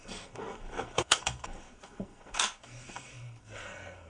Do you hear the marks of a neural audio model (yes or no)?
yes